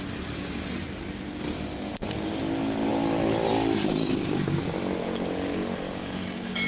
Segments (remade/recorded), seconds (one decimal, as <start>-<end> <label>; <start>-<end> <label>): 0.0-4.0 recorded; 4.0-4.6 remade; 4.6-5.0 recorded; 5.0-6.7 remade

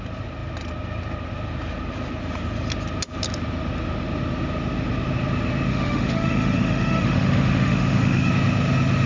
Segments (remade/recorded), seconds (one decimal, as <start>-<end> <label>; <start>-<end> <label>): 0.0-5.7 recorded; 5.7-8.3 remade; 8.3-9.1 recorded

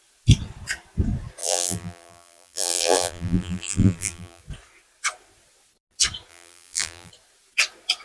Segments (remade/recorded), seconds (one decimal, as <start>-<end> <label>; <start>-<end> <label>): 0.0-1.4 recorded; 1.4-4.4 remade; 4.4-6.3 recorded; 6.3-7.1 remade; 7.1-8.0 recorded

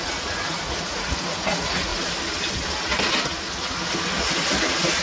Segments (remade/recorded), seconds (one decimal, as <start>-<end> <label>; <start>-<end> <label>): 0.0-1.9 remade; 1.9-5.0 recorded

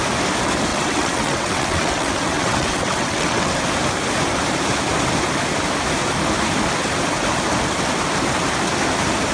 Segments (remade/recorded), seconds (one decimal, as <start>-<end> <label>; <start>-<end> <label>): 0.0-0.7 recorded; 0.7-3.6 remade; 3.6-9.3 recorded